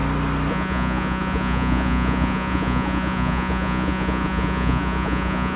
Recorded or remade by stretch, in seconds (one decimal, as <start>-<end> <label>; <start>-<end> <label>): 0.0-0.5 recorded; 0.5-5.6 remade